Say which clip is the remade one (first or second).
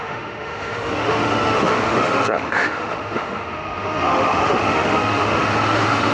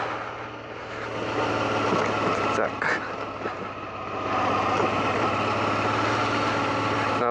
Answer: first